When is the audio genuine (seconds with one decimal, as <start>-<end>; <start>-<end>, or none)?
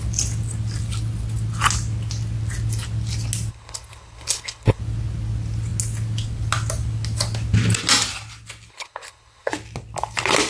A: 0.0-3.5; 4.8-8.7; 9.5-10.5